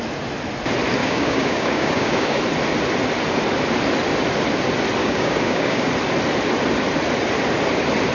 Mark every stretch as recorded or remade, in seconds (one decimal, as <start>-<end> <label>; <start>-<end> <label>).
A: 0.0-1.0 recorded; 1.0-2.4 remade; 2.4-5.0 recorded; 5.0-5.9 remade; 5.9-8.1 recorded